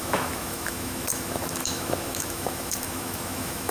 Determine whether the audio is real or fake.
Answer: fake